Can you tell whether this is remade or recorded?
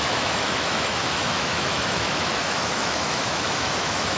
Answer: remade